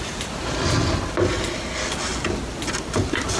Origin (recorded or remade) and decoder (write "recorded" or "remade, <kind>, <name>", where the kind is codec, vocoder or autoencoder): recorded